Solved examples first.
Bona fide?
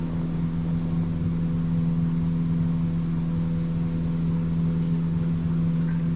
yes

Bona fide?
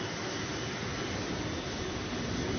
yes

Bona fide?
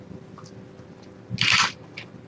yes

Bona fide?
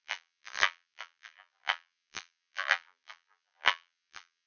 no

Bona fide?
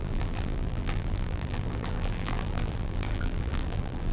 no